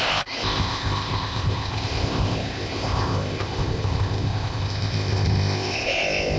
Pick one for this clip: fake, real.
fake